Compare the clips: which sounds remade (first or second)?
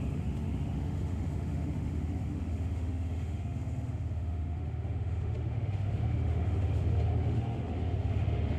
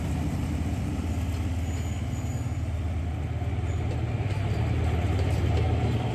first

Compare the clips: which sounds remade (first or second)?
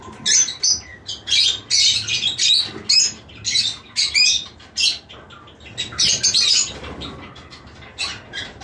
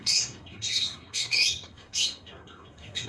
second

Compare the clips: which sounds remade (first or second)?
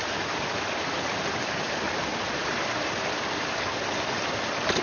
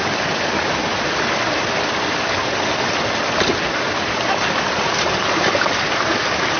first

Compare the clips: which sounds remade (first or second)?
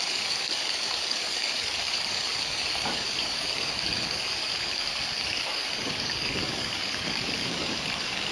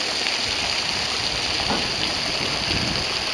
first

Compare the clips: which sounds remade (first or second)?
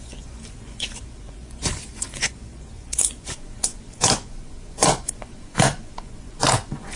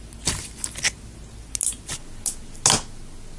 first